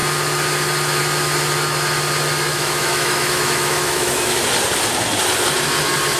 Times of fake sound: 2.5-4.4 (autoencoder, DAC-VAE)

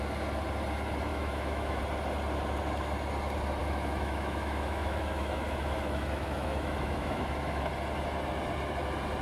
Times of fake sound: 1.1-1.8 (autoencoder, DAC-VAE); 3.6-7.7

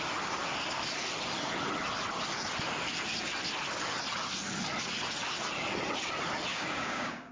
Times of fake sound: 6.5-7.3 (codec, DAC)

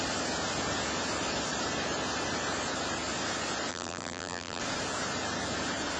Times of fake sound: 3.7-4.6 (vocoder, BigVGAN v2)

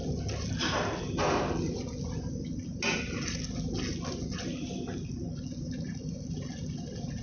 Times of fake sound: none

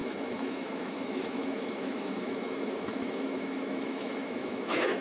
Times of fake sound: 0.0-5.0 (autoencoder, DAC-VAE)